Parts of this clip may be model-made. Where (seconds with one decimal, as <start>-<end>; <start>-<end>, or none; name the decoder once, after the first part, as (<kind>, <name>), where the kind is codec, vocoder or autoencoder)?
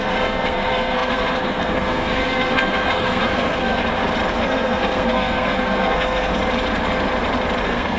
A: 0.0-3.8 (codec, SNAC); 4.3-6.3; 7.6-8.0